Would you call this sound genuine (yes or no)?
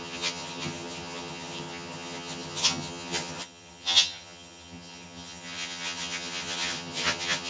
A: no